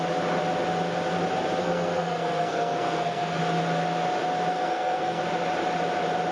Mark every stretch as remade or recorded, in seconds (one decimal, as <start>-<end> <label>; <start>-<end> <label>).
0.0-1.6 recorded; 1.6-3.4 remade; 3.4-4.5 recorded; 4.5-5.2 remade; 5.2-6.3 recorded